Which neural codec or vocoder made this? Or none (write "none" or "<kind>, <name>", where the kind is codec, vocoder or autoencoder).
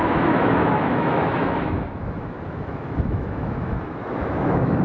autoencoder, DAC-VAE